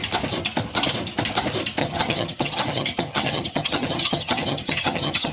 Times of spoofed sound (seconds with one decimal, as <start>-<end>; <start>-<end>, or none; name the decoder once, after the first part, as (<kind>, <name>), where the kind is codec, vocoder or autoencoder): 1.8-5.3 (vocoder, HiFi-GAN)